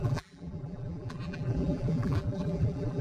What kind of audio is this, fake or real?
fake